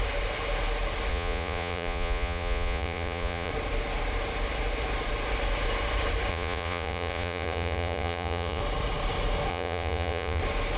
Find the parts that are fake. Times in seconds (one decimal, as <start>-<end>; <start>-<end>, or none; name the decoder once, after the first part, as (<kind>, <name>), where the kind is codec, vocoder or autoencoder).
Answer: 1.1-3.5 (vocoder, Vocos); 6.3-8.6; 9.5-10.4